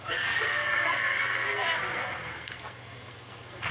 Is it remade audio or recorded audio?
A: remade